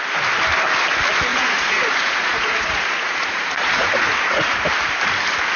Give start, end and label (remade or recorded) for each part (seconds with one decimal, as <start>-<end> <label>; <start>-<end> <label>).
0.0-1.3 recorded; 1.3-4.7 remade; 4.7-5.6 recorded